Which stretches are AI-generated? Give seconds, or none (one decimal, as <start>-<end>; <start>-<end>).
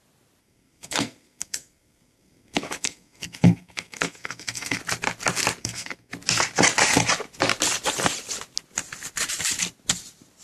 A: 0.4-4.8; 5.6-6.1